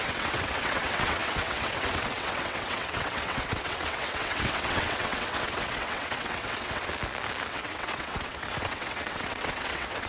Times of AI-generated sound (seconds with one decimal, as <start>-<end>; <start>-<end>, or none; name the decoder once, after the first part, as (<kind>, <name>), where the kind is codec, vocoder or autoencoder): 0.0-6.9 (vocoder, WaveNeXt); 7.5-10.1